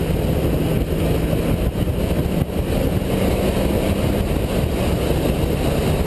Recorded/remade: recorded